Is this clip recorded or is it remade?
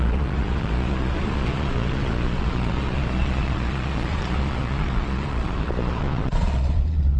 remade